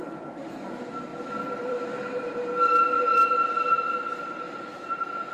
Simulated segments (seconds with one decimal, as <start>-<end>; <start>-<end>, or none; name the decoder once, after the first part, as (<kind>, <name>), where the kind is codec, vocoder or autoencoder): 1.1-2.5 (vocoder, BigVGAN v2)